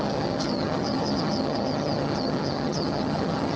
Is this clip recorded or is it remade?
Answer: remade